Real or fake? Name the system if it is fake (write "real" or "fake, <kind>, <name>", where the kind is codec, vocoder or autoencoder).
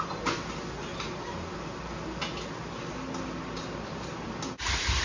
real